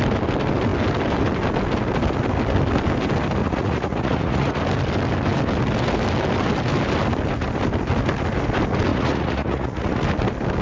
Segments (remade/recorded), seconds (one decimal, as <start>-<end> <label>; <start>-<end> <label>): 0.0-3.4 recorded; 3.4-4.6 remade; 4.6-8.9 recorded; 8.9-10.0 remade; 10.0-10.6 recorded